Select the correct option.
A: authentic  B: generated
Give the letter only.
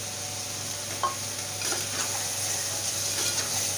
A